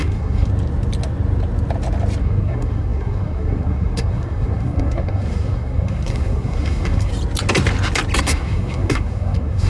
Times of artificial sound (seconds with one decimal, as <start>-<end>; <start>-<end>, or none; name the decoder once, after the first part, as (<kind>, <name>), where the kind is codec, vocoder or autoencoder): 0.0-0.5 (codec, SNAC); 2.2-7.1; 8.2-9.7